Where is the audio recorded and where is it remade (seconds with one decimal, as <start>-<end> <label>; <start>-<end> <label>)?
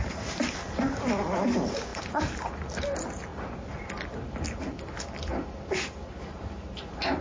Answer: 0.0-7.2 recorded